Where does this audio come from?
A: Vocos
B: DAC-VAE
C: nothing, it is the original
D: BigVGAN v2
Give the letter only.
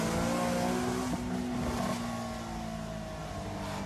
C